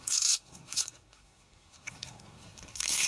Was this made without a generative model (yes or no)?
no